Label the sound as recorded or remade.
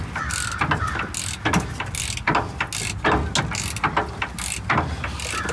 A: recorded